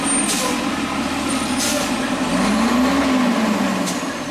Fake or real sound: real